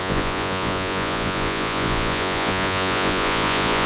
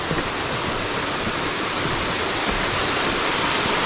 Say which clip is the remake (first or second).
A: first